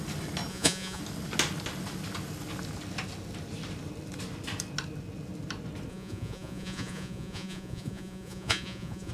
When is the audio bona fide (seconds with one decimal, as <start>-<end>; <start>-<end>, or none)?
0.0-0.5; 1.0-5.9